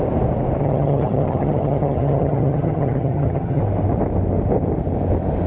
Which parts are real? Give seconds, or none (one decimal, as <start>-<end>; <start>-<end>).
0.0-0.6; 3.6-5.5